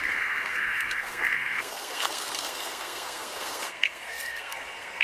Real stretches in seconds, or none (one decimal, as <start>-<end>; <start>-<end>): none